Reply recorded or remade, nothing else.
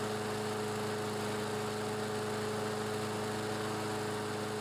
recorded